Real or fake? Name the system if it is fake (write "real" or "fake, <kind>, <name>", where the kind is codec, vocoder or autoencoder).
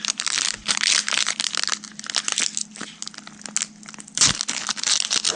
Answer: real